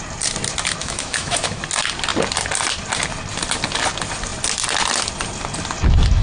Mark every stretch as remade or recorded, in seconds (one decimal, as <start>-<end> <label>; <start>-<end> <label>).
0.0-0.8 recorded; 0.8-1.6 remade; 1.6-6.2 recorded